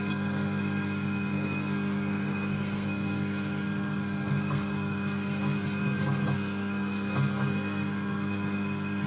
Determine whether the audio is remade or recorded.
remade